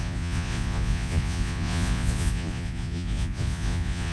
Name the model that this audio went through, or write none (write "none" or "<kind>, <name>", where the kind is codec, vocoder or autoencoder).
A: vocoder, Vocos